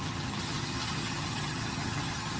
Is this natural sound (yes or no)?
no